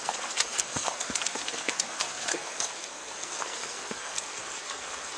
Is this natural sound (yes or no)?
no